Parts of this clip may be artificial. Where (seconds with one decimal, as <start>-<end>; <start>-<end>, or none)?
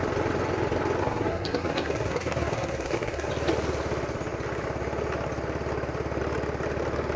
1.0-3.3